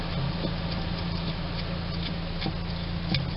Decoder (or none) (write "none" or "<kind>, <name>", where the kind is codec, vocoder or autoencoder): none